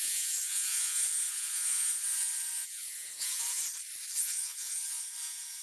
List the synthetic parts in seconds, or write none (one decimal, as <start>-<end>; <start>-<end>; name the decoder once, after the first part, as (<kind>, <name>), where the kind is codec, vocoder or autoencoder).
0.0-3.6 (vocoder, Vocos); 4.2-5.6